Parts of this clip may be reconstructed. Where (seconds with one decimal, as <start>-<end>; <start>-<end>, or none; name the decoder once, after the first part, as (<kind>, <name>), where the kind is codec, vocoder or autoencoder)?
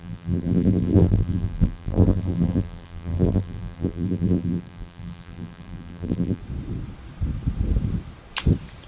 0.0-6.4 (vocoder, BigVGAN v2)